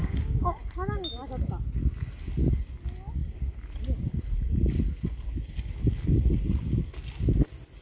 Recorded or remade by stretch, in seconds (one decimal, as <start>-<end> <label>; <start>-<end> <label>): 0.0-0.6 remade; 0.6-7.8 recorded